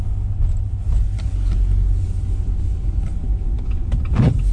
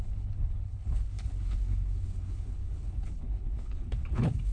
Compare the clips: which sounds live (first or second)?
first